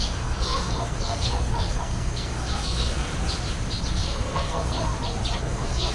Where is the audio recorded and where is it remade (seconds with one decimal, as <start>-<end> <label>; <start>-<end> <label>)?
0.0-3.1 remade; 3.1-3.9 recorded; 3.9-4.9 remade; 4.9-5.4 recorded; 5.4-5.9 remade